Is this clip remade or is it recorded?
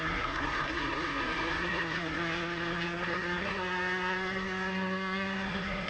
remade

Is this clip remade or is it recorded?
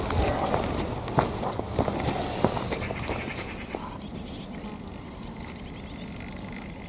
recorded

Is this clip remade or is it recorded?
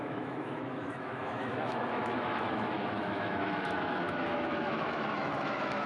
remade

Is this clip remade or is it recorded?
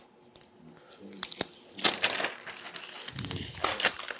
recorded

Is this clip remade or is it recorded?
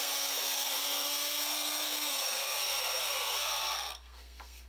remade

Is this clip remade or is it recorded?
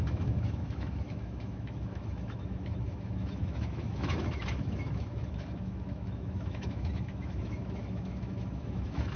remade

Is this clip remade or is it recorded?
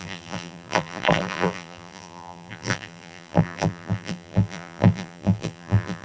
remade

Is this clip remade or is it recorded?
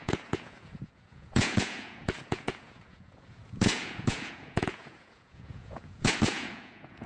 remade